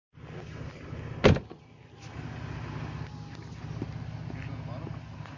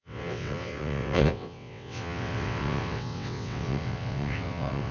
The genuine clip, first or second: first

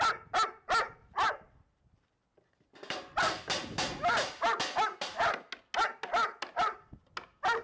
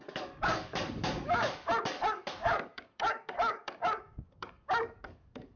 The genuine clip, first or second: first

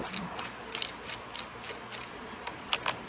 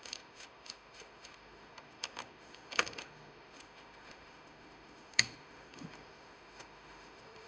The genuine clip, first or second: first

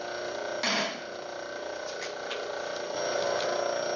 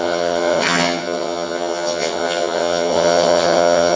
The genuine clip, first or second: first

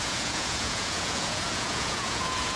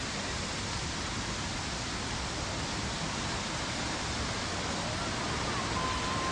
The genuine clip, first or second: second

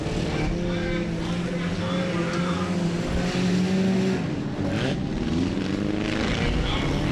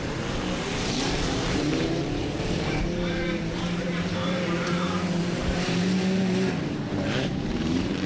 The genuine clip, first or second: first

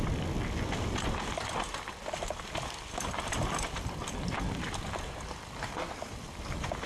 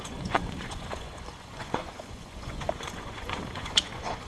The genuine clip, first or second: first